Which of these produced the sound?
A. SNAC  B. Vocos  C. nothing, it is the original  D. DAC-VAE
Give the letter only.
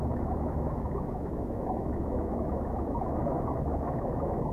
D